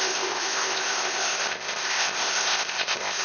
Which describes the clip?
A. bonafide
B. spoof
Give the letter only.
B